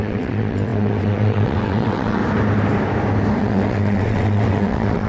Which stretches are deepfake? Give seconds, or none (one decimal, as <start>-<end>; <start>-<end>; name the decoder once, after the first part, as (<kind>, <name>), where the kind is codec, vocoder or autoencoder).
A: 0.0-2.2 (vocoder, WaveNeXt); 3.4-5.1